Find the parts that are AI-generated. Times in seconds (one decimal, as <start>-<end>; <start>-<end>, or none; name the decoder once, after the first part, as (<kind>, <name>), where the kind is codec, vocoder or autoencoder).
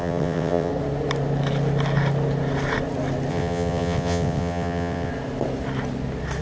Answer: 0.0-0.7 (vocoder, WaveNeXt); 3.3-5.1